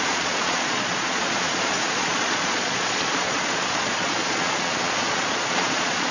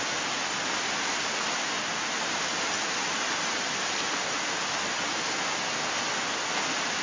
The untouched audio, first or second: second